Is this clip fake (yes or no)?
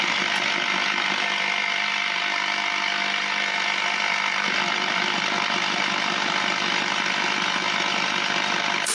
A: yes